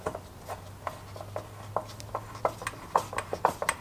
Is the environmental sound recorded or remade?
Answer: recorded